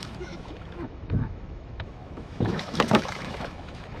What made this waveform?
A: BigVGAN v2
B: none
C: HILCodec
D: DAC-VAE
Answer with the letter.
D